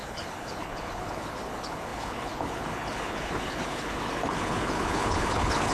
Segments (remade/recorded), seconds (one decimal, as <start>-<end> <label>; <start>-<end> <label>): 0.0-5.7 remade